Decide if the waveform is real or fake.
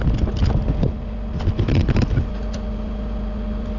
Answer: real